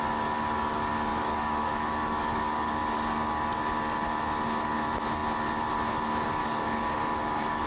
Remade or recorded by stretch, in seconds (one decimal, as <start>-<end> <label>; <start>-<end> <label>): 0.0-1.1 recorded; 1.1-2.8 remade; 2.8-6.4 recorded; 6.4-7.7 remade